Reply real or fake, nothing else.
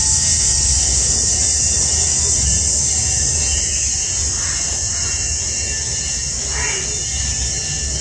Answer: real